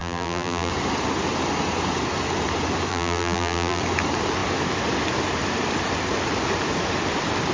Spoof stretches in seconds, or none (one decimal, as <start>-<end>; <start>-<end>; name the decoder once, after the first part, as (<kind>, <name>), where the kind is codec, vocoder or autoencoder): 0.0-0.7 (vocoder, BigVGAN v2); 2.9-3.8